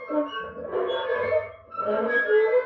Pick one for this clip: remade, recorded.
recorded